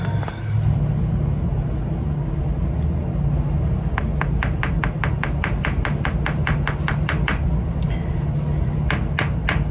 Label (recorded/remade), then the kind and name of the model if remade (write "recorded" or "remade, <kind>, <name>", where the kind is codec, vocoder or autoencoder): recorded